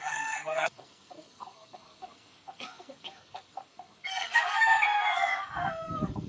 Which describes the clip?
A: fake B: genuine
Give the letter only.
A